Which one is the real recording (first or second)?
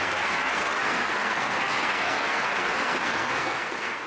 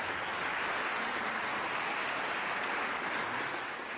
second